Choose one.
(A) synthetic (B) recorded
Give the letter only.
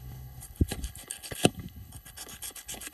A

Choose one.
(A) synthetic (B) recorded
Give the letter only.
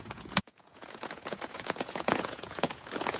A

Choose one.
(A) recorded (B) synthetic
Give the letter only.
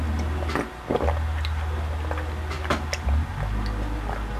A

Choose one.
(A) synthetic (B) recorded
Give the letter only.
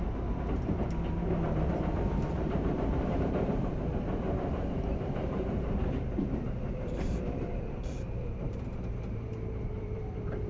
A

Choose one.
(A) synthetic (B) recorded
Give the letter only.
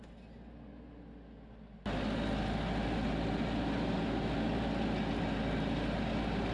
B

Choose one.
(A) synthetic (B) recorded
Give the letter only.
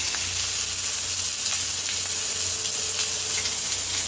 B